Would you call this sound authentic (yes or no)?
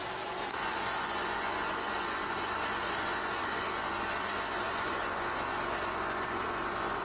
no